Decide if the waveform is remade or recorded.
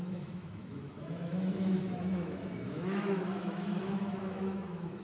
remade